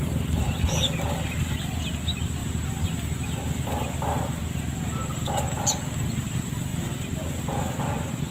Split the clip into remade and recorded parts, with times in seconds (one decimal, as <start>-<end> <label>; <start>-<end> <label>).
0.0-8.3 recorded